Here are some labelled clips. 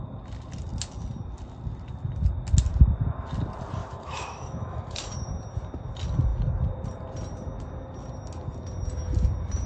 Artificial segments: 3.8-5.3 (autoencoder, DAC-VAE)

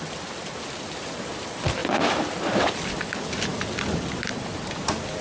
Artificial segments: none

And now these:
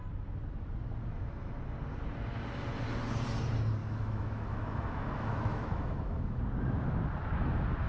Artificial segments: 3.8-6.4 (autoencoder, DAC-VAE)